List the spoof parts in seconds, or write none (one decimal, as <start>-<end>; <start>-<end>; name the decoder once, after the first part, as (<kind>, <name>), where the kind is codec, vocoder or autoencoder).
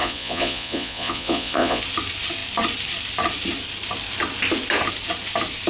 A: 0.0-1.8 (vocoder, Vocos)